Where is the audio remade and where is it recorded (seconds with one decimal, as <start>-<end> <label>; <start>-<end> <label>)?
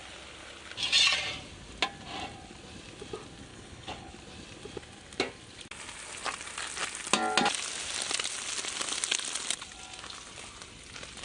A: 0.0-3.5 recorded; 3.5-4.1 remade; 4.1-11.2 recorded